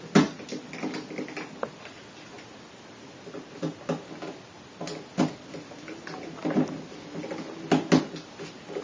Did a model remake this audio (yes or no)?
no